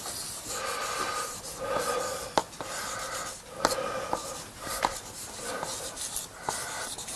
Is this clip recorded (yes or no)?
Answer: yes